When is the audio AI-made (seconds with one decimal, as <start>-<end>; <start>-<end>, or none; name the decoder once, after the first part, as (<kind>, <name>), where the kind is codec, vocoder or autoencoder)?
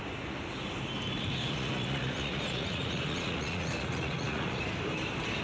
1.4-4.6 (vocoder, Vocos)